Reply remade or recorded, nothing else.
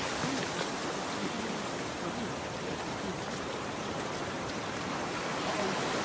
remade